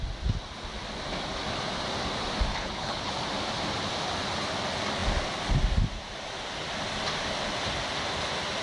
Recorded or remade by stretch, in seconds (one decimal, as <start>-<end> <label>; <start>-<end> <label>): 0.0-2.5 recorded; 2.5-3.1 remade; 3.1-8.6 recorded